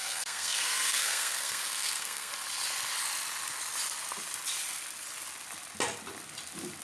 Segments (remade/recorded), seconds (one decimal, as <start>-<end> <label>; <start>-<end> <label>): 0.0-2.3 remade; 2.3-6.8 recorded